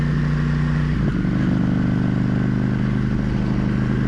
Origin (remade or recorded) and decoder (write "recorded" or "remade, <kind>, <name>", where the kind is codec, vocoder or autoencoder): recorded